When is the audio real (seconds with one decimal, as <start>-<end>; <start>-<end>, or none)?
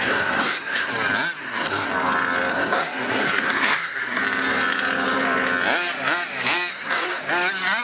0.9-1.4; 1.9-2.5; 4.2-6.7; 7.2-7.8